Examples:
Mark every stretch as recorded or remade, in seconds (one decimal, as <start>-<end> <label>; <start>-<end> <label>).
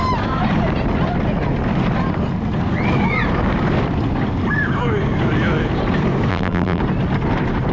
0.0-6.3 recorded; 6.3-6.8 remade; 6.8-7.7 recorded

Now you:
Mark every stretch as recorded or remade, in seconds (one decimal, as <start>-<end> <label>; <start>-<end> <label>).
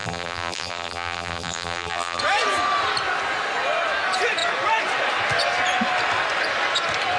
0.0-2.2 remade; 2.2-7.2 recorded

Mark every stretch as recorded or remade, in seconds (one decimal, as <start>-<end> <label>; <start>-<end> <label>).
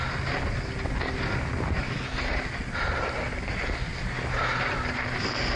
0.0-5.6 recorded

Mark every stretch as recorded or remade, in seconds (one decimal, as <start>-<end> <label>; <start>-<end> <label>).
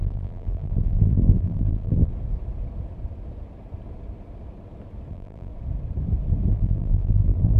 0.0-2.1 remade; 2.1-5.1 recorded; 5.1-5.5 remade; 5.5-6.5 recorded; 6.5-7.6 remade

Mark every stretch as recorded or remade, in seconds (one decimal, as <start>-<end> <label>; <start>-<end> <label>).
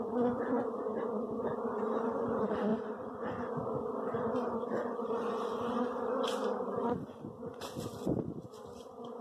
0.0-2.7 recorded; 2.7-3.5 remade; 3.5-9.2 recorded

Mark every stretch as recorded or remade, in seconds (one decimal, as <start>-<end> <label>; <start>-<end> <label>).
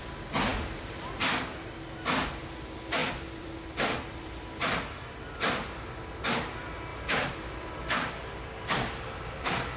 0.0-0.5 recorded; 0.5-1.2 remade; 1.2-3.0 recorded; 3.0-5.3 remade; 5.3-6.9 recorded; 6.9-9.1 remade; 9.1-9.8 recorded